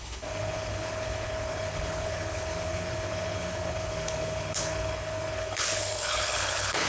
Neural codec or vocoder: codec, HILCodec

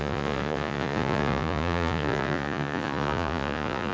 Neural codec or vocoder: vocoder, Vocos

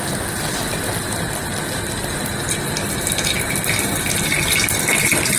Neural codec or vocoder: none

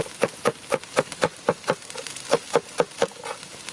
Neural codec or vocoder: none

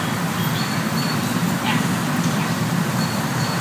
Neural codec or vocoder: none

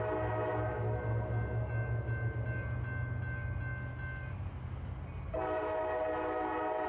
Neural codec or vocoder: none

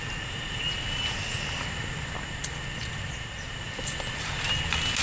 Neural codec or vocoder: none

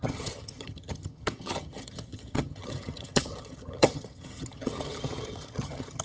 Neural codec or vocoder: vocoder, HiFi-GAN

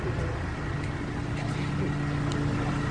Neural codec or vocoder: none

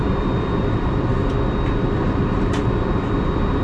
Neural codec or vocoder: vocoder, BigVGAN v2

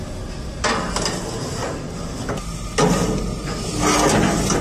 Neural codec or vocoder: none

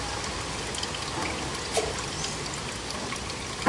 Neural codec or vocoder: none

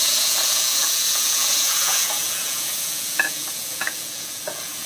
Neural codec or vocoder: vocoder, Vocos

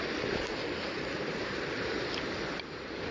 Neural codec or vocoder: vocoder, BigVGAN v2